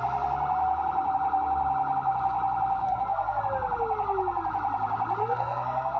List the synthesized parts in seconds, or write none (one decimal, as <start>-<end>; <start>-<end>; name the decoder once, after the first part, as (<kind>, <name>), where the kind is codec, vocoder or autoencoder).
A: 2.8-3.4 (codec, SNAC); 5.2-6.0